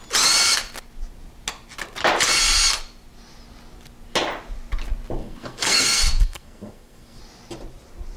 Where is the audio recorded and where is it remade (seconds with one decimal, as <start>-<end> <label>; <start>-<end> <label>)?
0.0-5.2 recorded; 5.2-7.2 remade; 7.2-8.2 recorded